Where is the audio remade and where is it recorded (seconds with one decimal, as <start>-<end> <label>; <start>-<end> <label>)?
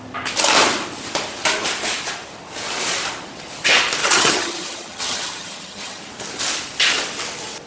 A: 0.0-4.0 recorded; 4.0-6.0 remade; 6.0-7.7 recorded